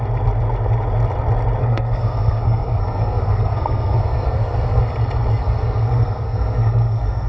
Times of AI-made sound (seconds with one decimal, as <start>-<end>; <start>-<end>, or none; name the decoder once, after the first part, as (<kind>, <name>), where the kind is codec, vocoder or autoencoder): 1.6-4.8 (codec, SNAC); 5.4-7.3